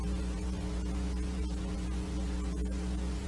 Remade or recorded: remade